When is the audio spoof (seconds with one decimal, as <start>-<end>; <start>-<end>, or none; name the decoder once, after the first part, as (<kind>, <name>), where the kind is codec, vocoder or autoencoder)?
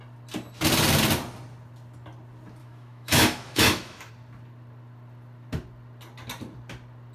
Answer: 2.6-4.1 (autoencoder, DAC-VAE)